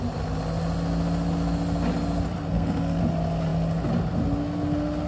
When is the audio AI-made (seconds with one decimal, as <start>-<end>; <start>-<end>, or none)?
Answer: 2.5-3.0